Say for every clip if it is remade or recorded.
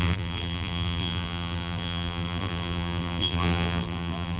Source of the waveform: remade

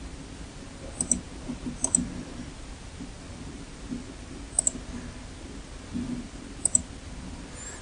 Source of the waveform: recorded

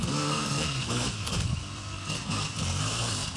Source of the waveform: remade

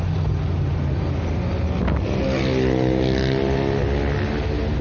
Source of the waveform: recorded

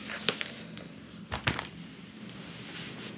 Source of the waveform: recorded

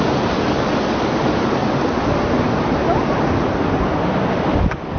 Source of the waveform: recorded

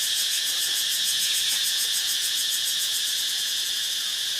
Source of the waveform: remade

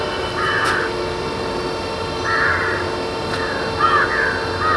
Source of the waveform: remade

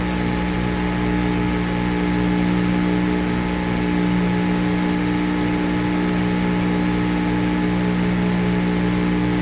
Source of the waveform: recorded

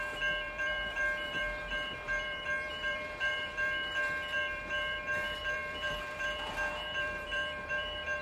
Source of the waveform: remade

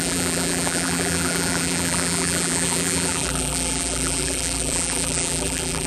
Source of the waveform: remade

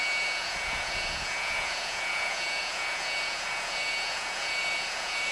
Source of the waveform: remade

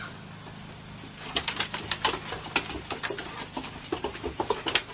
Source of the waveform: recorded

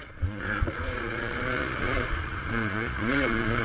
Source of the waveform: remade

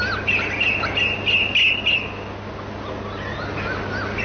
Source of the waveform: recorded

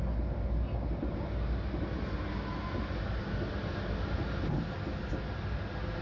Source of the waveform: recorded